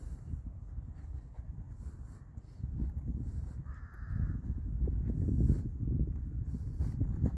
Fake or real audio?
fake